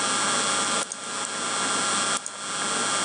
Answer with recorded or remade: recorded